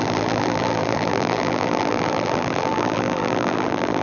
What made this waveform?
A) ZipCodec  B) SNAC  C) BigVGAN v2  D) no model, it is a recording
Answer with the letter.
C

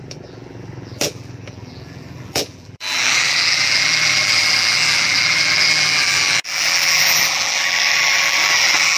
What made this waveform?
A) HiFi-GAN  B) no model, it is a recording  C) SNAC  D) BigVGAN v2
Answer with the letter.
D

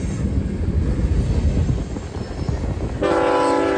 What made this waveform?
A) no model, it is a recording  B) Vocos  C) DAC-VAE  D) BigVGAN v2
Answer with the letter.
A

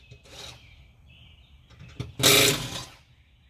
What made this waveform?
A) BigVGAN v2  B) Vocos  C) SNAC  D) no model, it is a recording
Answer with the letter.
D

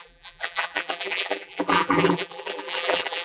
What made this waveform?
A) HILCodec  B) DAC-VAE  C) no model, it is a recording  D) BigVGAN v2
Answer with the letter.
D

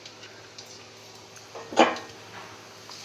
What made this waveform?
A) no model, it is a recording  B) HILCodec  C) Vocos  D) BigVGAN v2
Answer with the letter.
A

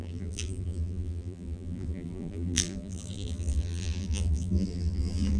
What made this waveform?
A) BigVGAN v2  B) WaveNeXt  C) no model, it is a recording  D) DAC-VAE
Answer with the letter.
A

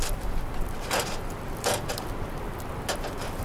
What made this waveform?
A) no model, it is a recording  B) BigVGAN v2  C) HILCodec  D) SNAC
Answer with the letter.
A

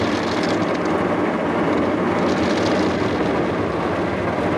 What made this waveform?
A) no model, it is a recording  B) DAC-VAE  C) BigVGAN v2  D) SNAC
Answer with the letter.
A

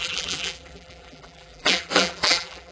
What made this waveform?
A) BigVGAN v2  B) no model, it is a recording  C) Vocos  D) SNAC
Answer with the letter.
A